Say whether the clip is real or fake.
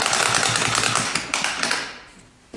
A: real